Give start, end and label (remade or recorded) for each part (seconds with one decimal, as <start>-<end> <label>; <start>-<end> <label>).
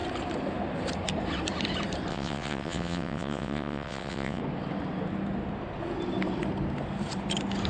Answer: 0.0-2.1 recorded; 2.1-4.4 remade; 4.4-7.7 recorded